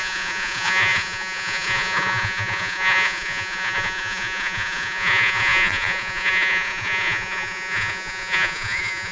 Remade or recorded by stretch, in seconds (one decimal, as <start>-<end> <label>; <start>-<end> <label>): 0.0-9.1 remade